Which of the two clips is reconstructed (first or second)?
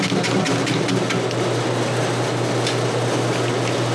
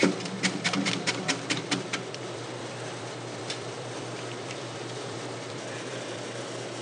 second